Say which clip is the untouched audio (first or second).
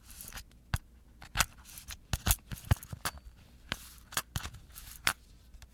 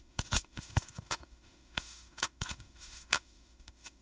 first